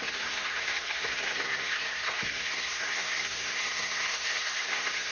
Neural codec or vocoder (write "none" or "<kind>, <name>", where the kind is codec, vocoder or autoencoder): codec, SNAC